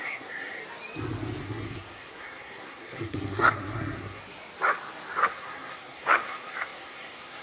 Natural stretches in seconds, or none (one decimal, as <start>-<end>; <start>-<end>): 0.6-1.4; 4.2-5.2